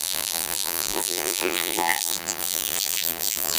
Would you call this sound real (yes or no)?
no